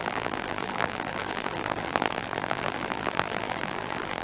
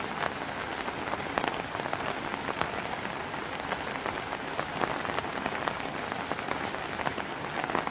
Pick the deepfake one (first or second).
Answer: first